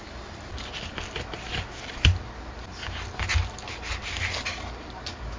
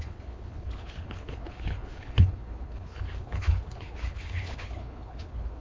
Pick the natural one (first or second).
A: first